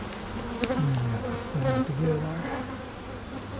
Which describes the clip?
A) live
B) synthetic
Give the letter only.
A